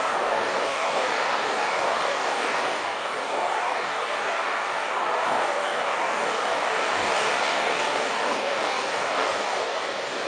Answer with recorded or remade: remade